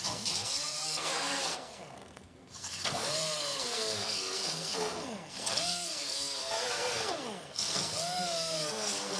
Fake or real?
fake